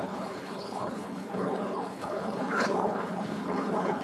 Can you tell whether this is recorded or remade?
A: remade